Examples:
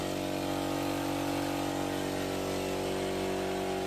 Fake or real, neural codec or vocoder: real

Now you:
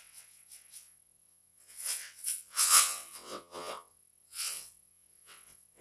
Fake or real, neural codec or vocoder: fake, vocoder, WaveNeXt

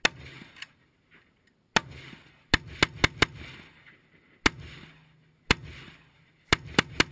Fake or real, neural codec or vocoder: real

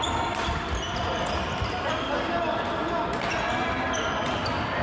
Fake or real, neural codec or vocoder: real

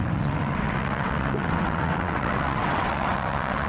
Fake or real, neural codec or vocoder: fake, vocoder, WaveNeXt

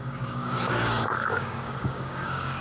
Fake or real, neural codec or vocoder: fake, codec, DAC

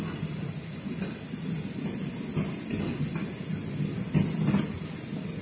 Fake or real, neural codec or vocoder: real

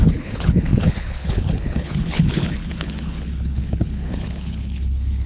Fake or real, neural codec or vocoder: fake, codec, HILCodec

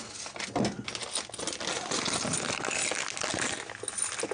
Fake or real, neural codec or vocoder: real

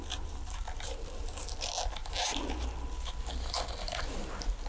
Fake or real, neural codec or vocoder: real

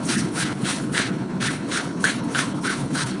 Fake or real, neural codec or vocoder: fake, codec, HILCodec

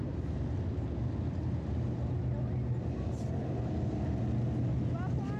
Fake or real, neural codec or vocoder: real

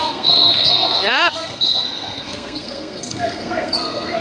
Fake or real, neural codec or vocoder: fake, codec, SNAC